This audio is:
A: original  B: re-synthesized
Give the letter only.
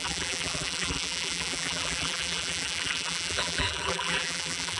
B